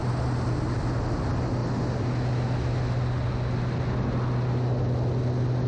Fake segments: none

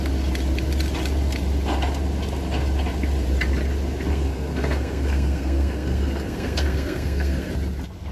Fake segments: 4.1-7.5

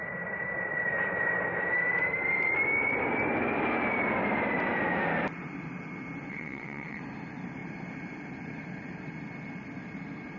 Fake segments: 6.3-7.0